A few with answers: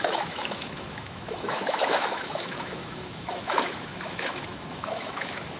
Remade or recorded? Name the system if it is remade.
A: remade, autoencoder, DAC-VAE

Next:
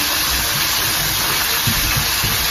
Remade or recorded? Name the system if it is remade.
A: recorded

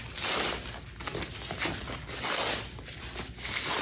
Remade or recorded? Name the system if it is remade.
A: recorded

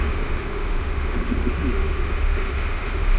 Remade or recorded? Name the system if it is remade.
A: remade, autoencoder, DAC-VAE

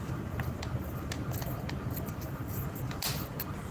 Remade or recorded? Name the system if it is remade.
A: recorded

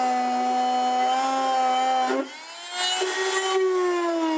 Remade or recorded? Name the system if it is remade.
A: recorded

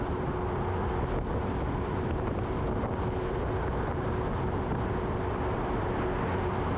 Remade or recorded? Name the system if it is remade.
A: recorded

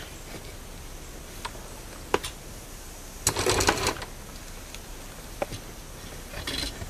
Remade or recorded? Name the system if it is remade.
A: recorded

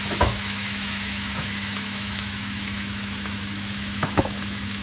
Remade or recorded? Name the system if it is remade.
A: remade, autoencoder, DAC-VAE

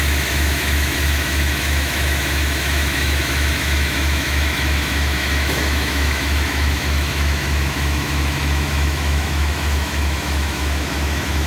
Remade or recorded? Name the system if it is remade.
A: remade, autoencoder, DAC-VAE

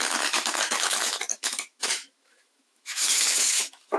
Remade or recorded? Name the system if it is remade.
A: remade, autoencoder, DAC-VAE